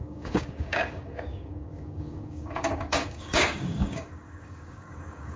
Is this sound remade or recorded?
remade